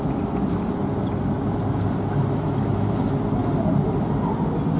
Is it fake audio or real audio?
real